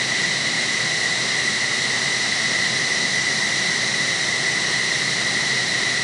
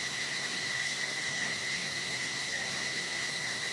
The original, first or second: first